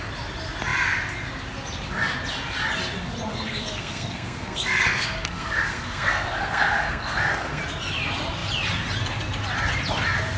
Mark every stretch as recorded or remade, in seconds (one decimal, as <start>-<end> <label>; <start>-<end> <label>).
0.0-3.3 recorded; 3.3-7.6 remade; 7.6-10.4 recorded